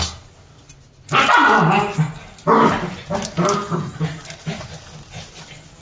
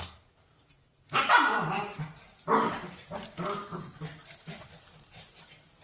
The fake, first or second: second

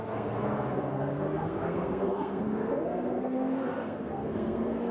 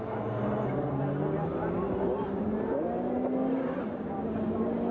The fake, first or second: first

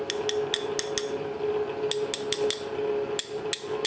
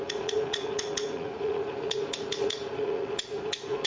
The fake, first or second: second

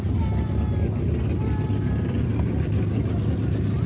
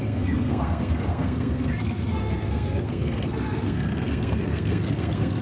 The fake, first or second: second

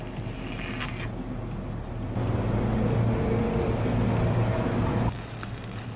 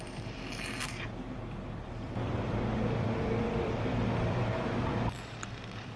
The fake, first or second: second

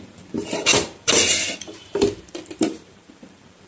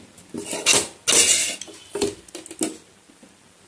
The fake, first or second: first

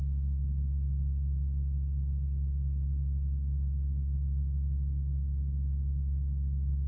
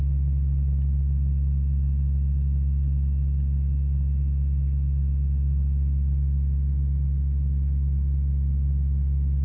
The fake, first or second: first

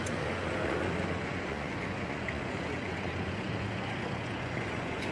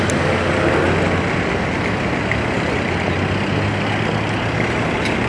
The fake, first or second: first